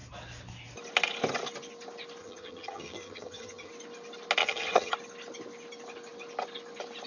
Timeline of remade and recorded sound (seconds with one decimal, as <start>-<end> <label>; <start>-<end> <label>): 0.0-2.2 recorded; 2.2-3.7 remade; 3.7-4.4 recorded; 4.4-4.9 remade; 4.9-7.1 recorded